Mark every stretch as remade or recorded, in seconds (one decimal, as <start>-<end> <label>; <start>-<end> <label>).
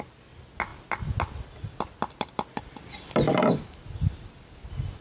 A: 0.0-5.0 recorded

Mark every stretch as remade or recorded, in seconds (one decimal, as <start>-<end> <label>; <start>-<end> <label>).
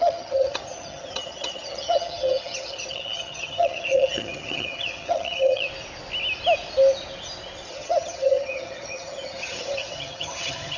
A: 0.0-5.7 remade; 5.7-7.7 recorded; 7.7-10.8 remade